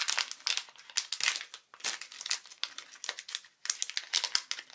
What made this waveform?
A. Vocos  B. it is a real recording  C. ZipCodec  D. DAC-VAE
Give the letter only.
B